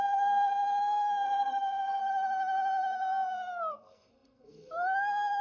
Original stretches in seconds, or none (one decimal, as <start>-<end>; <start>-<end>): 2.0-3.7